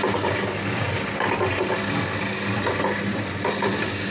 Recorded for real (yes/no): yes